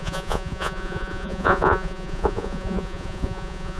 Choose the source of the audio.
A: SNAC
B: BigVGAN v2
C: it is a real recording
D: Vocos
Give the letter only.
D